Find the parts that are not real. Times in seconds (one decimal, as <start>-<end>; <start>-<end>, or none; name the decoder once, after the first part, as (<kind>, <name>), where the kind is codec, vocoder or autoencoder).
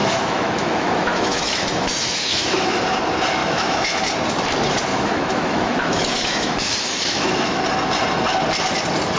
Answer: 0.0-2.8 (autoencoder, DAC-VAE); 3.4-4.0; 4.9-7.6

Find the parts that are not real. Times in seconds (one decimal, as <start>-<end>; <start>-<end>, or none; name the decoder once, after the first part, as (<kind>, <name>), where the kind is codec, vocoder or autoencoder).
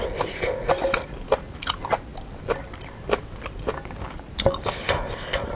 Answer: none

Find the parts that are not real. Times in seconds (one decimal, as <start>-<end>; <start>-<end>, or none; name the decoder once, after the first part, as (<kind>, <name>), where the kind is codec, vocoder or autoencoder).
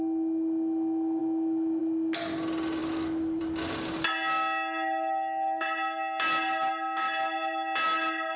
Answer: none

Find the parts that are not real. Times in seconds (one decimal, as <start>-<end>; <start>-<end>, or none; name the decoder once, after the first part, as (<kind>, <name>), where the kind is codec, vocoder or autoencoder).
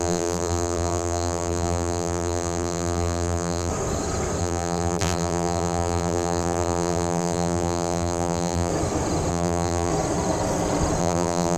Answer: 0.0-3.7 (vocoder, BigVGAN v2); 4.4-8.7; 9.3-9.9; 11.0-11.6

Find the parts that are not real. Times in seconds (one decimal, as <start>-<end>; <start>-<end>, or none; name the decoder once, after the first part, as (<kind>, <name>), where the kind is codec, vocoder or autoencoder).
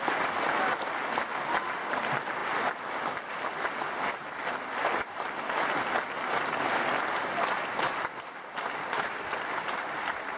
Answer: none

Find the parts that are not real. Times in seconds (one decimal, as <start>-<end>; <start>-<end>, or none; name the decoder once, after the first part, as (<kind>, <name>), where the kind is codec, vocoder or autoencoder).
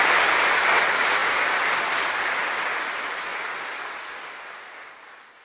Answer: none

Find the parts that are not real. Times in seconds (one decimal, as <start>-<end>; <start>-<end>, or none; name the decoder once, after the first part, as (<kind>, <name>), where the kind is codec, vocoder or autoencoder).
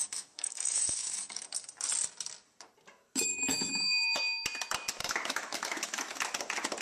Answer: 0.0-1.4 (autoencoder, DAC-VAE); 3.3-4.2; 5.0-6.1